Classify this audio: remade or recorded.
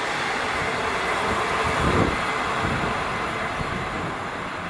recorded